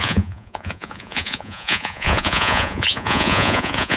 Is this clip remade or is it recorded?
remade